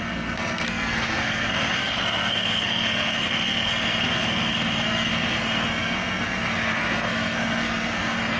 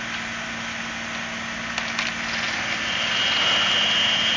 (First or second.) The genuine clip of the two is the second